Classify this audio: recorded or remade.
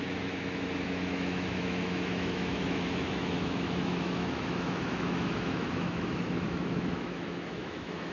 remade